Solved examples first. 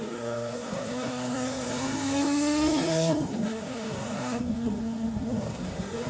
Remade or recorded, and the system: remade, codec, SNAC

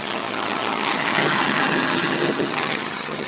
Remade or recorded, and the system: remade, vocoder, HiFi-GAN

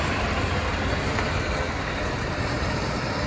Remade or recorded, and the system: recorded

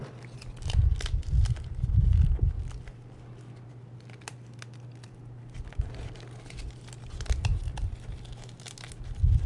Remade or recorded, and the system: recorded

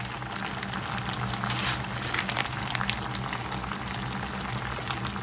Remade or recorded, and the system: recorded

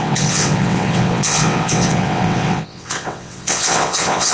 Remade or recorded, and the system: remade, vocoder, WaveNeXt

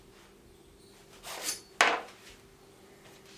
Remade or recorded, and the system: recorded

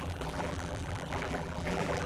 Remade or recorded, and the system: remade, vocoder, BigVGAN v2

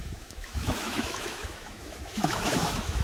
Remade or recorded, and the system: remade, autoencoder, DAC-VAE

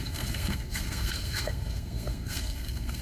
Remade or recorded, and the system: remade, codec, SNAC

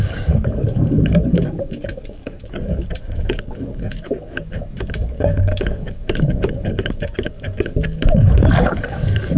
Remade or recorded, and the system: remade, codec, DAC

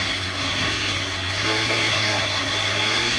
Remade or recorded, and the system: remade, codec, SNAC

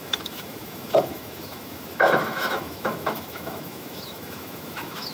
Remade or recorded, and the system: remade, autoencoder, DAC-VAE